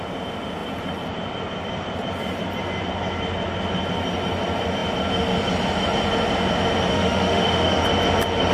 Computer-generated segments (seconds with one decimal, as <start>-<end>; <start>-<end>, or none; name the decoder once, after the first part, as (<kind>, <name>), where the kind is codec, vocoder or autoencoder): 6.9-7.8 (autoencoder, DAC-VAE)